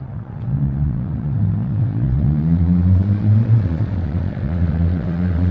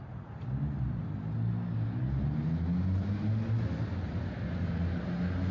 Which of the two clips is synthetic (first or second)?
first